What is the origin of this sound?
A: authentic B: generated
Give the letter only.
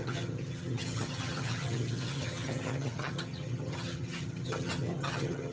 B